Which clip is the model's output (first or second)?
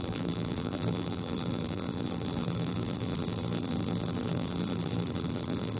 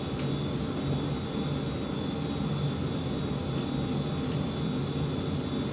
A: first